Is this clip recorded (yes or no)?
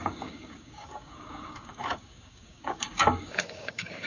no